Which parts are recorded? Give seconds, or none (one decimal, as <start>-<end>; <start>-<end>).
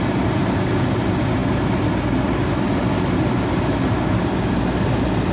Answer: 0.0-5.3